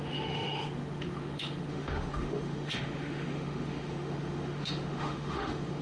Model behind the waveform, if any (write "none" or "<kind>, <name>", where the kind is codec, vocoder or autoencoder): autoencoder, DAC-VAE